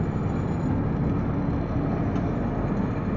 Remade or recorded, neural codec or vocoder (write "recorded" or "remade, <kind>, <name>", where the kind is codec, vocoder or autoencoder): recorded